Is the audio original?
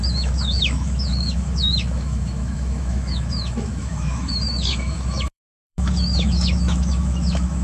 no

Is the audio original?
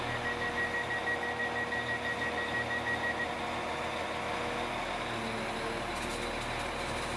yes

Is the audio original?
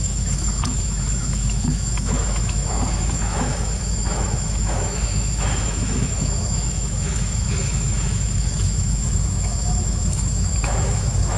no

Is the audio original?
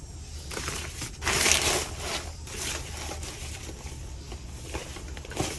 yes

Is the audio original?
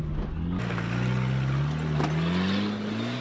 yes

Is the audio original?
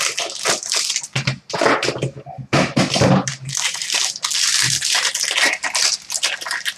yes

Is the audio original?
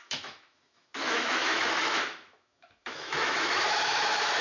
no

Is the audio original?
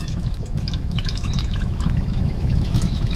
no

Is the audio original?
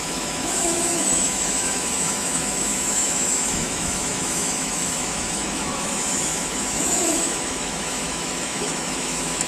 no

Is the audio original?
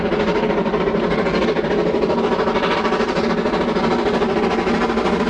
yes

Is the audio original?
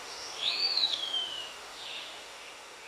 no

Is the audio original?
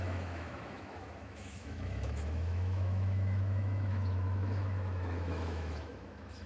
no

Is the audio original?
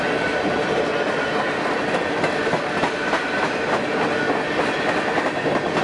yes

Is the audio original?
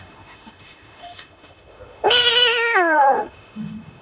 no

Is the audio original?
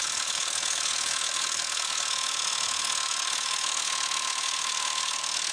no